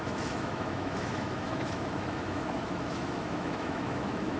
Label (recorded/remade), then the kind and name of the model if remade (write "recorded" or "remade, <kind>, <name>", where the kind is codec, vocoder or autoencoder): remade, autoencoder, DAC-VAE